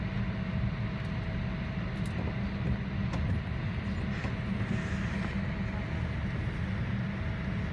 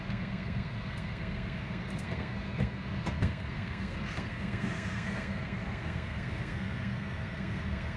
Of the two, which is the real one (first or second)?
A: first